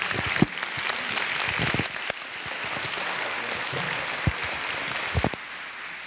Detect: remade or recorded recorded